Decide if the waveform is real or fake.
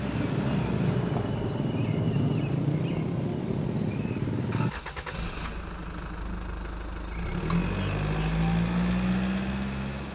real